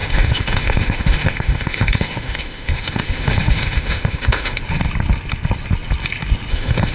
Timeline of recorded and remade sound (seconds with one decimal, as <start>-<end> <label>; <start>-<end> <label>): 0.0-4.6 remade; 4.6-6.5 recorded; 6.5-6.9 remade